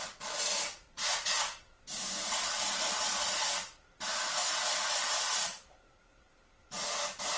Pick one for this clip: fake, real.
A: fake